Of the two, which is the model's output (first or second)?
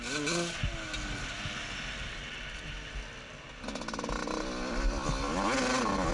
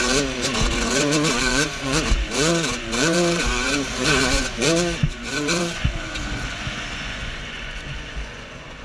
second